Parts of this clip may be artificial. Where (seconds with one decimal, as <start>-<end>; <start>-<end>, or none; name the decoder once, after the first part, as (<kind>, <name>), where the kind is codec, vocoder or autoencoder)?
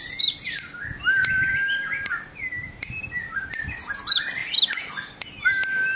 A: 0.0-3.6 (vocoder, BigVGAN v2)